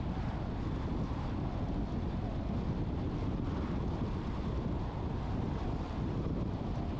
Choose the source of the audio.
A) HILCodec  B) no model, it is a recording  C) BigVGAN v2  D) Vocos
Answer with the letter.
B